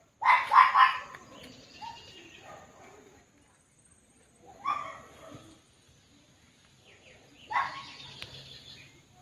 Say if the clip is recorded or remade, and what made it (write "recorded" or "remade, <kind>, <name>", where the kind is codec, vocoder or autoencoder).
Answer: recorded